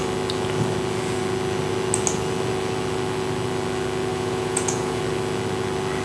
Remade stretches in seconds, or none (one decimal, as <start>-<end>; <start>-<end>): 4.1-5.0